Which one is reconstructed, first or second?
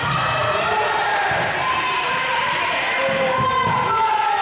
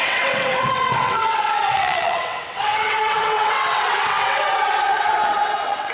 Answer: second